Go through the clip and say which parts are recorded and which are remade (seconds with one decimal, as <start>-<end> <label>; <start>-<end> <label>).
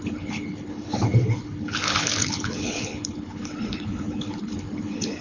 0.0-5.2 remade